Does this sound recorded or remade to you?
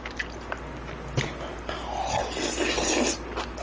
recorded